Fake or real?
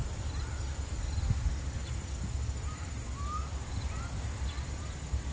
real